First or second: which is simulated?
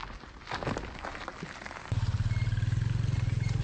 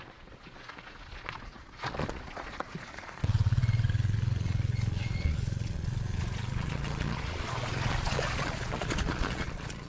second